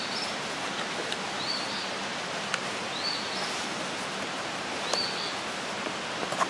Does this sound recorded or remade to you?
recorded